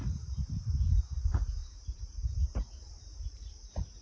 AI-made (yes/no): yes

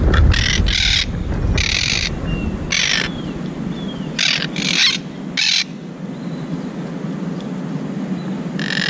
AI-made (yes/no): no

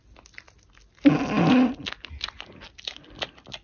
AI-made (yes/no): no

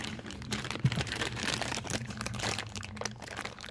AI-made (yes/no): yes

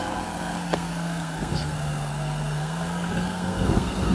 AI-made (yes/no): yes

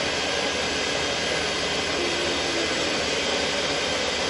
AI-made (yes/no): no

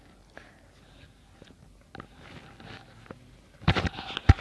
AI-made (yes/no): no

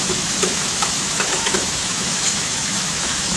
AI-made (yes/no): yes